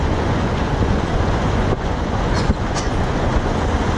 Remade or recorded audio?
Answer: remade